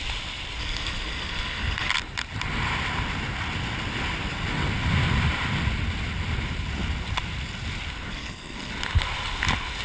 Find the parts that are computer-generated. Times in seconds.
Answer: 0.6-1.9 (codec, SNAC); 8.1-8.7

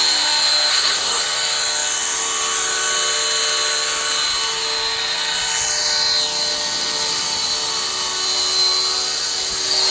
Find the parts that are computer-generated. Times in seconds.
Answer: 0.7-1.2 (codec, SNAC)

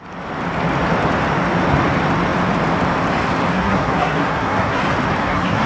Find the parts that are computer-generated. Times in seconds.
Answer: 3.5-4.8 (codec, SNAC); 5.2-5.7

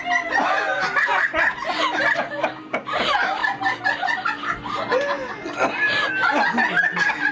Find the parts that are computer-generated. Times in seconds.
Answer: none